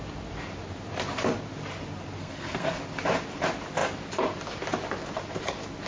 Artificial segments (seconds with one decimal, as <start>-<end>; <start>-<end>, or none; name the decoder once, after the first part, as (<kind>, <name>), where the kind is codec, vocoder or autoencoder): 2.2-2.8 (codec, SNAC)